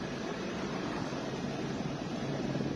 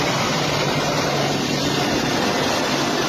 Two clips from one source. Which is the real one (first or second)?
second